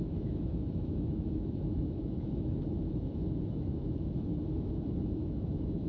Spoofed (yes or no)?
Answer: yes